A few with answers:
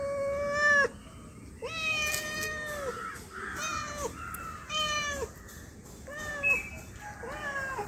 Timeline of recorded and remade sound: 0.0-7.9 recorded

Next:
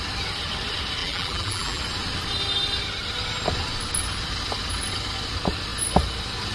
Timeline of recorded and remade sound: 0.0-1.0 recorded; 1.0-1.8 remade; 1.8-6.5 recorded

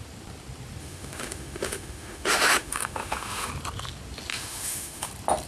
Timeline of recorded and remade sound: 0.0-0.8 recorded; 0.8-3.5 remade; 3.5-4.3 recorded; 4.3-5.1 remade; 5.1-5.5 recorded

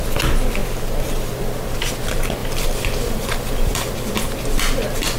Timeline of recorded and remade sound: 0.0-2.4 recorded; 2.4-3.9 remade; 3.9-5.2 recorded

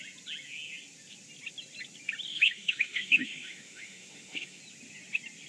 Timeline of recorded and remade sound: 0.0-2.3 recorded; 2.3-4.6 remade; 4.6-5.5 recorded

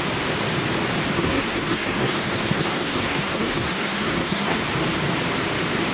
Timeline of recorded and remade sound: 0.0-1.1 recorded; 1.1-4.6 remade; 4.6-5.9 recorded